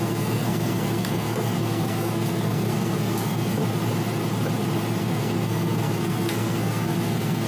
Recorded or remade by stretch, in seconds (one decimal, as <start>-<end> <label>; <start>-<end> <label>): 0.0-3.6 remade; 3.6-5.0 recorded; 5.0-7.5 remade